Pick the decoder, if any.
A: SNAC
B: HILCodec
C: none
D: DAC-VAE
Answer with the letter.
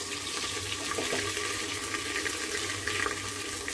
C